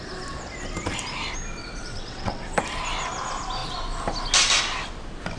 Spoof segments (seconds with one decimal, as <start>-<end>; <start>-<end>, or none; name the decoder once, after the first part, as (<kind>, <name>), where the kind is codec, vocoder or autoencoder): 1.6-2.6 (vocoder, WaveNeXt)